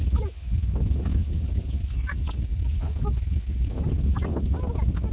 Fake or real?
real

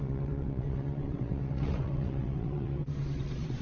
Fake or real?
fake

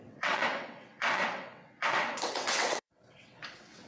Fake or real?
fake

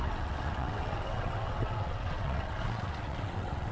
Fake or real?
fake